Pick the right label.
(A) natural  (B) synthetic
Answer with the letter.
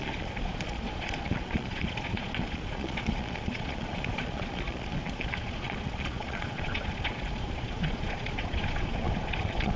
B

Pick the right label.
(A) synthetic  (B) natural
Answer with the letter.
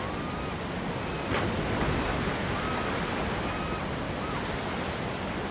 B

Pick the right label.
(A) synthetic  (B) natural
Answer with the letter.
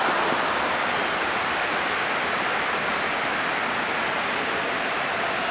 B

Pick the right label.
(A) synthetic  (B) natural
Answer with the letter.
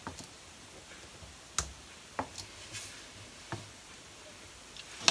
B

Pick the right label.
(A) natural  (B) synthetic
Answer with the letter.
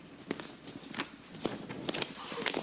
A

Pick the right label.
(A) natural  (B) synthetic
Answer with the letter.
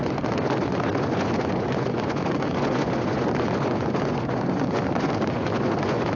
B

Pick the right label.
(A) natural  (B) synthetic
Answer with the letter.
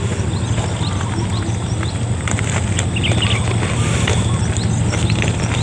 A